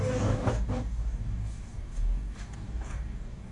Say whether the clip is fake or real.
fake